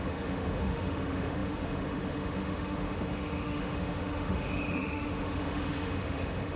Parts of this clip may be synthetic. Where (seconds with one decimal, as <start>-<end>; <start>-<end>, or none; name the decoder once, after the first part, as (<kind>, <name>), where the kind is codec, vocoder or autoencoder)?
0.0-6.6 (autoencoder, DAC-VAE)